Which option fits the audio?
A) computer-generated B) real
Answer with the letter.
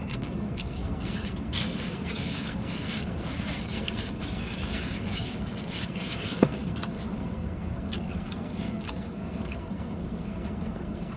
A